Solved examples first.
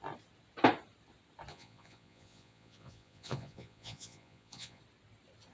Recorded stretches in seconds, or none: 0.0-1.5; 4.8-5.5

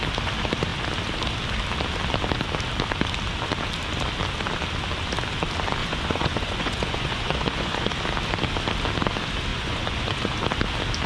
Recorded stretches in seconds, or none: 0.0-5.8; 7.9-9.5; 10.3-11.1

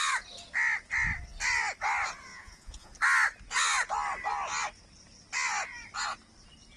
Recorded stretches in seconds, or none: 0.0-2.3; 2.9-6.8

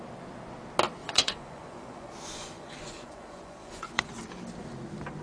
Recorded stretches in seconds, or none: 0.0-1.0; 4.1-5.2

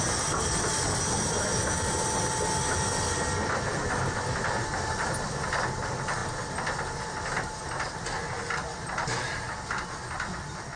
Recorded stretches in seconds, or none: 0.0-10.8

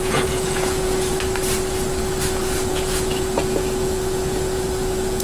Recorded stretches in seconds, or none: 1.1-2.7

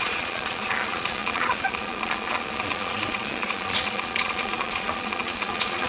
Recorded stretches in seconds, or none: none